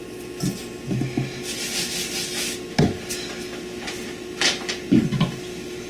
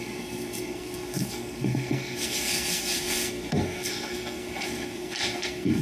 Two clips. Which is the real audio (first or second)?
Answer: first